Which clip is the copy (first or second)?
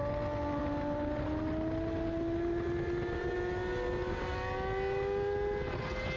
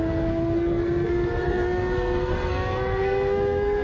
second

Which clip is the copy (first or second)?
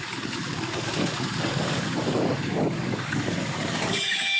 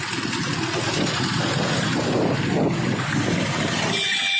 first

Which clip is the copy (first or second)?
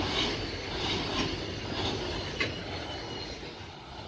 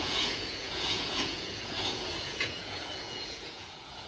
second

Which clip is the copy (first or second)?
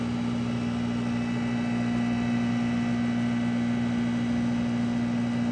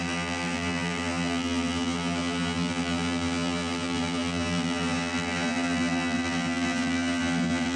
second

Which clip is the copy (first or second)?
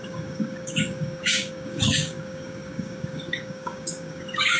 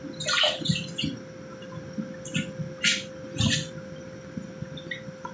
first